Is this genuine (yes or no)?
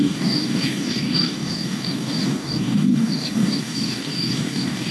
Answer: no